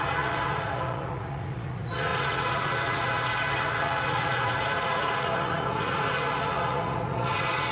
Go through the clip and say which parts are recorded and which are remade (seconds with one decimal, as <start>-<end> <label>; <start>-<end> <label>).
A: 0.0-7.7 remade